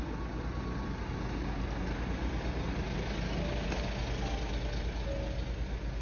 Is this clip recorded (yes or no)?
yes